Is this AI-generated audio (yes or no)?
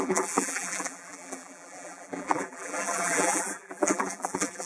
yes